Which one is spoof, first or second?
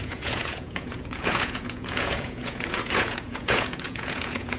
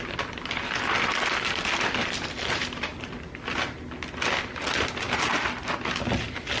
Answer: first